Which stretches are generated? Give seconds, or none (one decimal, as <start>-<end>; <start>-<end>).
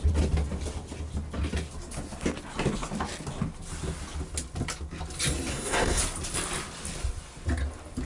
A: 5.5-6.0